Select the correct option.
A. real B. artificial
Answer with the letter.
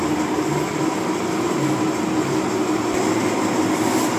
A